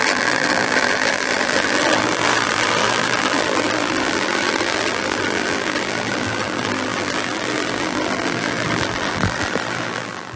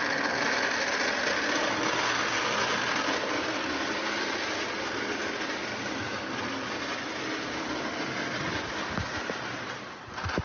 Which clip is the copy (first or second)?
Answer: first